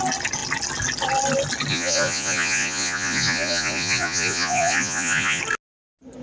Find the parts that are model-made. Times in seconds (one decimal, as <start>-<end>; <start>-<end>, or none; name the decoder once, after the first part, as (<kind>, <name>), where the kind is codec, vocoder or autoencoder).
1.7-5.4 (vocoder, Vocos)